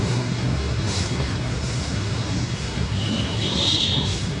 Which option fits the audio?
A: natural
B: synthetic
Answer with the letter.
B